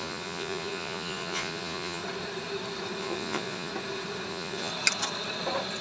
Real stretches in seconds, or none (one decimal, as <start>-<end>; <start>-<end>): 2.0-3.0; 3.7-4.3; 4.7-5.8

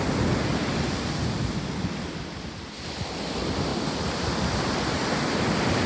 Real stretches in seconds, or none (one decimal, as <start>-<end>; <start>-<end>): 0.0-5.9

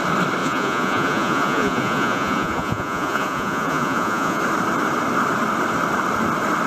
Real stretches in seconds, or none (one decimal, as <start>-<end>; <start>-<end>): 0.0-0.4; 4.4-6.7

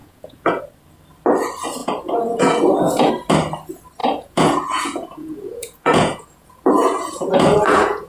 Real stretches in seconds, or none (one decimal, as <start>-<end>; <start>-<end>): 0.6-1.8; 3.1-4.0

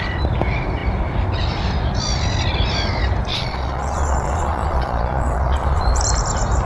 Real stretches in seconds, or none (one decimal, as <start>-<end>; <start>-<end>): 0.0-3.3; 6.0-6.6